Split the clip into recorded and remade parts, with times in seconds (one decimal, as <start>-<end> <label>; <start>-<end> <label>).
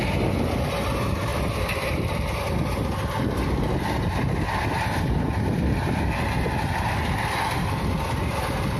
0.0-8.8 recorded